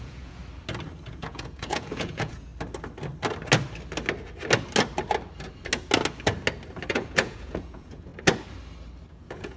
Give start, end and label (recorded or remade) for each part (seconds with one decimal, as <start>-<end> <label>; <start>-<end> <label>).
0.0-0.4 remade; 0.4-1.1 recorded; 1.1-2.5 remade; 2.5-6.9 recorded; 6.9-8.1 remade; 8.1-9.1 recorded; 9.1-9.6 remade